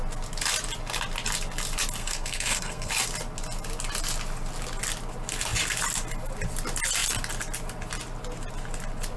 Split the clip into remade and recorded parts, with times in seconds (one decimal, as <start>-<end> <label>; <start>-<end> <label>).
0.0-2.0 recorded; 2.0-2.9 remade; 2.9-9.2 recorded